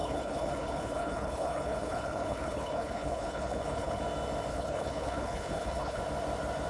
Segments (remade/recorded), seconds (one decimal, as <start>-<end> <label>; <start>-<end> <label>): 0.0-4.0 remade; 4.0-4.5 recorded; 4.5-6.0 remade; 6.0-6.7 recorded